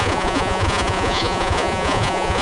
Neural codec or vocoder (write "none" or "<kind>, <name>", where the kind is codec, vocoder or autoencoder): vocoder, Vocos